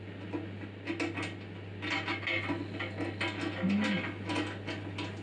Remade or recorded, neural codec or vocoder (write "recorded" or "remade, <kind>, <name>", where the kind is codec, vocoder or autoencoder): recorded